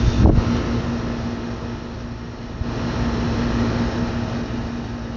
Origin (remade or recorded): recorded